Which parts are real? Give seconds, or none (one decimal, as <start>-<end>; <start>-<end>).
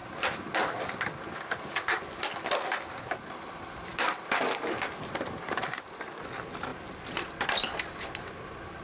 0.0-8.8